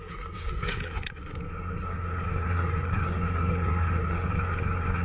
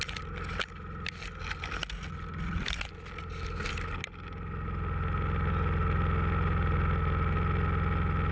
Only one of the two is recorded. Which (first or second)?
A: second